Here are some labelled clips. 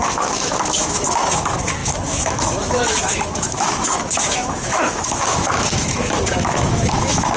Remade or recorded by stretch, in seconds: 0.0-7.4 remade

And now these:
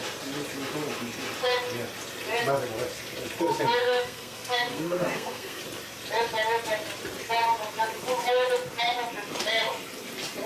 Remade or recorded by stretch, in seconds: 0.0-3.8 recorded; 3.8-5.6 remade; 5.6-10.5 recorded

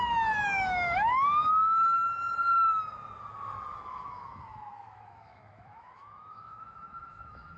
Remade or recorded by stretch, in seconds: 0.0-2.0 remade; 2.0-3.7 recorded; 3.7-7.6 remade

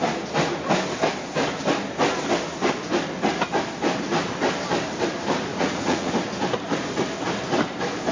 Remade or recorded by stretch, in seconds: 0.0-5.5 recorded; 5.5-6.1 remade; 6.1-8.1 recorded

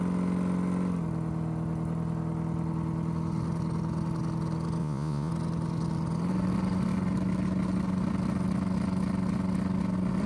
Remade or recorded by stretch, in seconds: 0.0-4.8 recorded; 4.8-5.3 remade; 5.3-10.3 recorded